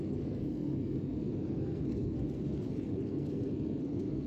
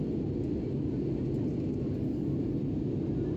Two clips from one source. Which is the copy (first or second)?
first